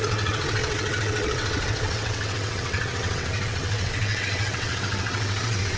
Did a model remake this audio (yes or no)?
yes